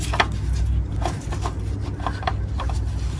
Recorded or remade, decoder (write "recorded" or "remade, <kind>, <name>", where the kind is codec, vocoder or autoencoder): recorded